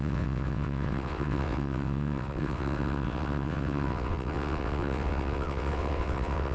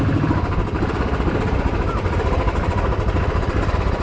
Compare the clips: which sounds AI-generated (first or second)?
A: first